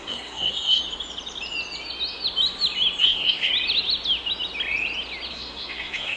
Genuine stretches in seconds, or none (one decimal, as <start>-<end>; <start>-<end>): 0.8-3.0; 3.5-5.3